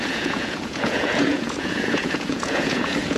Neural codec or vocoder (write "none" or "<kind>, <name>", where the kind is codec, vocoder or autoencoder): vocoder, Vocos